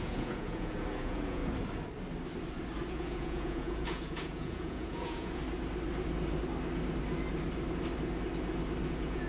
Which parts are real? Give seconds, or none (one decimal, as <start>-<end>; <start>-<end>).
1.4-2.9; 5.4-8.9